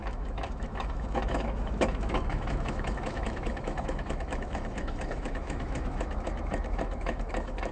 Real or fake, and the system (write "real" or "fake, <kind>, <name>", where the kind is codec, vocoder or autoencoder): fake, autoencoder, DAC-VAE